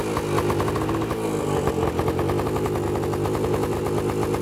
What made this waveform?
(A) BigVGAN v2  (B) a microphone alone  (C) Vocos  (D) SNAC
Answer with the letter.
B